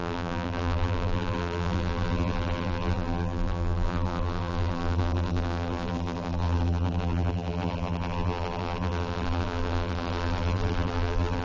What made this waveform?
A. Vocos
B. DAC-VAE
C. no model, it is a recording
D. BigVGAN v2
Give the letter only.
D